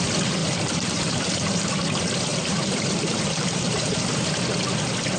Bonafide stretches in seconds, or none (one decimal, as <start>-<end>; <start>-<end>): 0.0-0.4; 1.7-2.3; 4.0-5.2